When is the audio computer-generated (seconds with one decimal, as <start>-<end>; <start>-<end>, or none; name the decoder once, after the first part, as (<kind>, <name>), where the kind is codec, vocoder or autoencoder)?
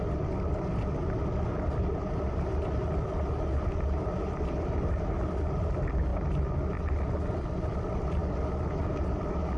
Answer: none